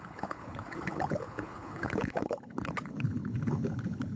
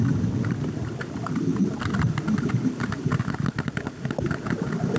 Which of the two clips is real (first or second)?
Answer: second